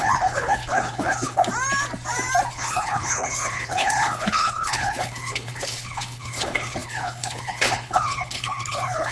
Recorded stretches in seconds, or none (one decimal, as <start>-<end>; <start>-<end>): 1.4-2.5